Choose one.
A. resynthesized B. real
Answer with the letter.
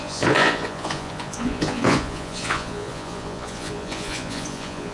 A